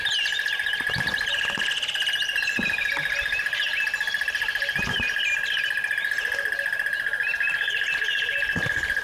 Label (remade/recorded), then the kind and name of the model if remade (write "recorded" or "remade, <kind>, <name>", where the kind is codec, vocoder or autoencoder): recorded